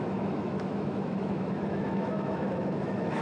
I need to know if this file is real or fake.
fake